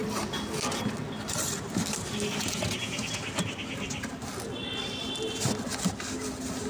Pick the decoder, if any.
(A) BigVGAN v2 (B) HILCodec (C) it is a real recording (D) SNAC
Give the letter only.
C